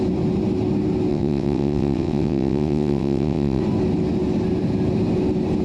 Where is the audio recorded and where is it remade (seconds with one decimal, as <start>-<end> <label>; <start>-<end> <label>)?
0.0-1.1 recorded; 1.1-3.6 remade; 3.6-5.6 recorded